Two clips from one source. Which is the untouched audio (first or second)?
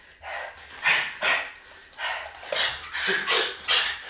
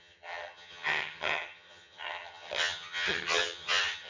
first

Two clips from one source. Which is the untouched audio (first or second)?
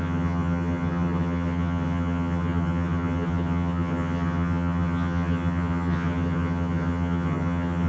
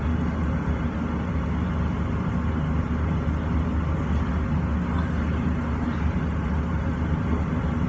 second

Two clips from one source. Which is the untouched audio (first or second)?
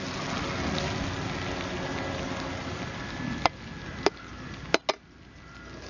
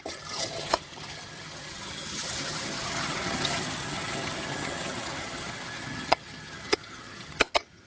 first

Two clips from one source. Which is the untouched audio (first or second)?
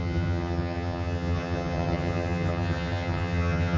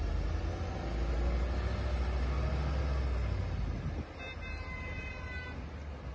second